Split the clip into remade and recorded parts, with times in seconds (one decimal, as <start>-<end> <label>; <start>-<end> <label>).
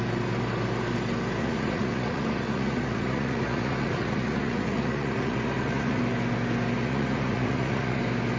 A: 0.0-1.4 recorded; 1.4-6.0 remade; 6.0-6.8 recorded; 6.8-8.0 remade; 8.0-8.4 recorded